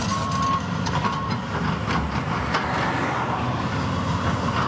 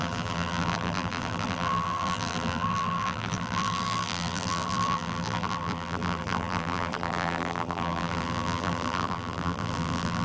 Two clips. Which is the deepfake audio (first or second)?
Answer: second